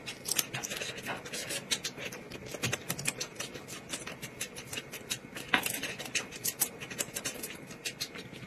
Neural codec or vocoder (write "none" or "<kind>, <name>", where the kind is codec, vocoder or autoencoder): none